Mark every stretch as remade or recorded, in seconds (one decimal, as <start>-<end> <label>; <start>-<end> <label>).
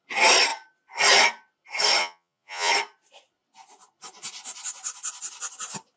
0.0-2.0 recorded; 2.0-2.7 remade; 2.7-6.0 recorded